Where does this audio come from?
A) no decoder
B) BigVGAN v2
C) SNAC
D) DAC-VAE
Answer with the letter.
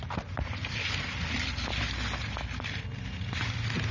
A